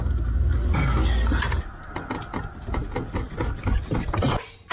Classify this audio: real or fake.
real